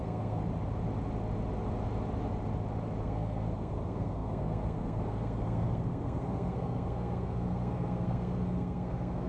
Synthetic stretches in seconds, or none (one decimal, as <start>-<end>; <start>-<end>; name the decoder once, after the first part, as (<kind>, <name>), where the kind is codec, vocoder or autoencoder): 0.0-0.4 (codec, SNAC); 3.0-9.3